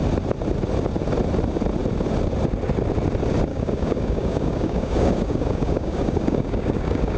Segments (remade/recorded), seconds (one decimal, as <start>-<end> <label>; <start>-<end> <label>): 0.0-3.5 recorded; 3.5-7.2 remade